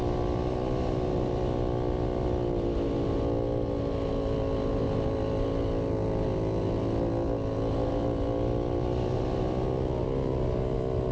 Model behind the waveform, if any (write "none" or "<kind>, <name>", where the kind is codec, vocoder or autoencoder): none